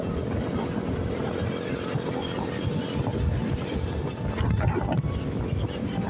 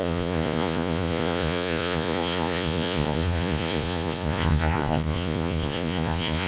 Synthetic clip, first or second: second